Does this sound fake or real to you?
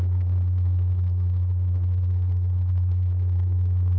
fake